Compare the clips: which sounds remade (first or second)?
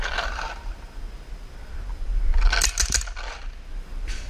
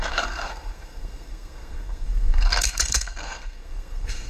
second